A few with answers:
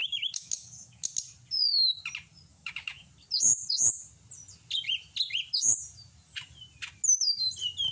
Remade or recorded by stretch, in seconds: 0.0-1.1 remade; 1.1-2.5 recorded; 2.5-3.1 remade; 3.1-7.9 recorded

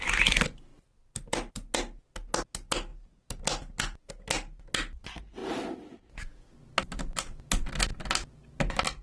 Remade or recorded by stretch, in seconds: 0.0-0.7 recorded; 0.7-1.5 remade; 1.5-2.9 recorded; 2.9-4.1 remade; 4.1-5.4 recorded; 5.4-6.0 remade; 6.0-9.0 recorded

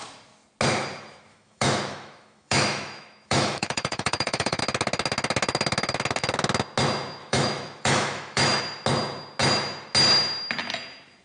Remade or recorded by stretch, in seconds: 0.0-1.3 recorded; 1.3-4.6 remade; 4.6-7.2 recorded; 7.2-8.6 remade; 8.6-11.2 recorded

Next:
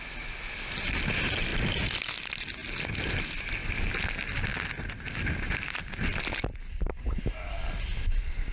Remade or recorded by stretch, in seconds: 0.0-8.5 recorded

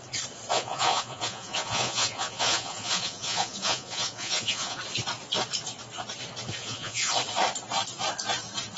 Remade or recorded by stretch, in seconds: 0.0-0.5 recorded; 0.5-4.8 remade; 4.8-6.6 recorded; 6.6-7.1 remade; 7.1-8.8 recorded

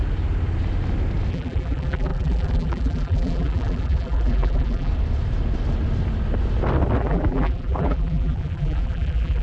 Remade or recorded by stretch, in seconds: 0.0-1.3 recorded; 1.3-4.9 remade; 4.9-7.0 recorded; 7.0-9.4 remade